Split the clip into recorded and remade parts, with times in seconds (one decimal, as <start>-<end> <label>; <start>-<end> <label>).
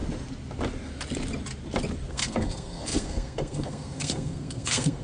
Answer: 0.0-2.1 recorded; 2.1-5.0 remade